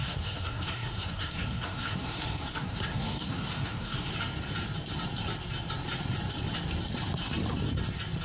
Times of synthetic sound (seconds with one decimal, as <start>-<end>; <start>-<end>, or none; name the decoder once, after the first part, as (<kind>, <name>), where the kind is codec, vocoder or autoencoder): 0.0-4.1 (codec, SNAC)